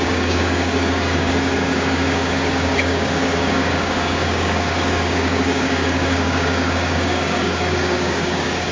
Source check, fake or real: fake